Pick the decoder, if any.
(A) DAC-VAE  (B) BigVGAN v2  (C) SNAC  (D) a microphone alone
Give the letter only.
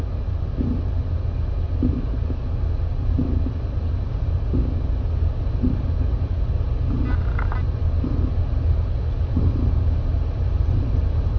D